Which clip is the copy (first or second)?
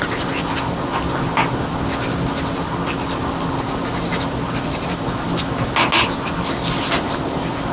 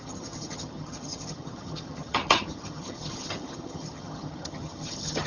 second